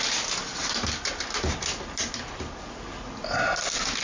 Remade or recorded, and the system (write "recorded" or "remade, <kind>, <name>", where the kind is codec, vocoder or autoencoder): recorded